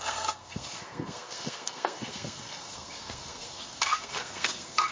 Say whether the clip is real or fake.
fake